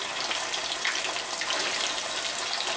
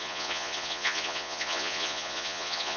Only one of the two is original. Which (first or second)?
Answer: first